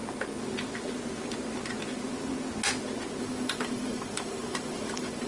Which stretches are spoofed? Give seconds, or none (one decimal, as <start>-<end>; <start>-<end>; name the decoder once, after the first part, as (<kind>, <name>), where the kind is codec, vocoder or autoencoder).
3.2-5.3 (vocoder, BigVGAN v2)